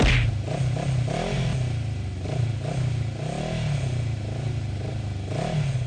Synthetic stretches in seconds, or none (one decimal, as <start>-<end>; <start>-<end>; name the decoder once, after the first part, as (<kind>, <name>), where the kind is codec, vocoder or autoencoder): none